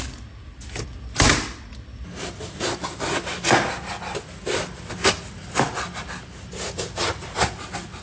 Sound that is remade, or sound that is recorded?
recorded